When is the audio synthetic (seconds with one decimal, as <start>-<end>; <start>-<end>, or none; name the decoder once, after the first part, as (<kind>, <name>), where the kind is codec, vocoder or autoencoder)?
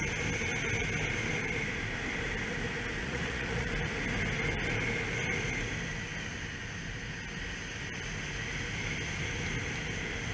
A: 3.0-3.7 (vocoder, Vocos)